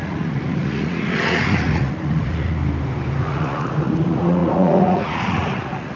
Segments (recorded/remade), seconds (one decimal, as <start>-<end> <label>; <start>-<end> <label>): 0.0-2.6 remade; 2.6-3.2 recorded; 3.2-6.0 remade